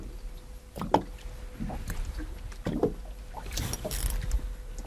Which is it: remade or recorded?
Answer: recorded